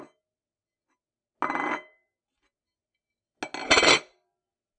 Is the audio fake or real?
real